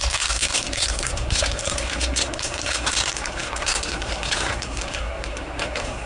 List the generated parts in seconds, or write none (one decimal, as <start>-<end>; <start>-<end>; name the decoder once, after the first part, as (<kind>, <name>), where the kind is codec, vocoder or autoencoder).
0.0-6.1 (codec, SNAC)